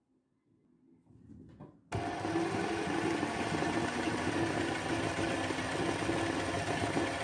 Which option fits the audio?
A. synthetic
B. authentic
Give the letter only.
B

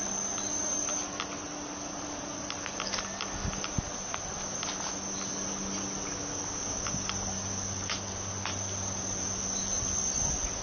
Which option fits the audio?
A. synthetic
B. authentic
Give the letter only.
B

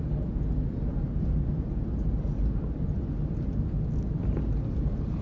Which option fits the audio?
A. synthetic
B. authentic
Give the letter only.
B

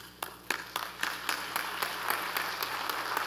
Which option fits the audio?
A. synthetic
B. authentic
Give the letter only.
B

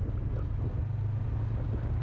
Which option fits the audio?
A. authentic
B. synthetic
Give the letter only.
A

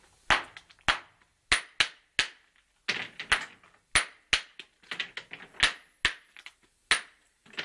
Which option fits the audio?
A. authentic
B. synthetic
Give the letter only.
A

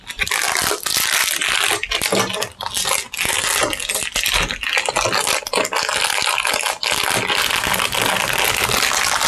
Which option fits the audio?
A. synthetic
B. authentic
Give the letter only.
B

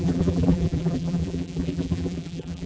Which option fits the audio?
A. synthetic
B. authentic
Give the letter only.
A